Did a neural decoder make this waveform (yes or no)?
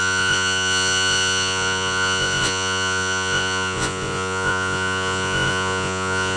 yes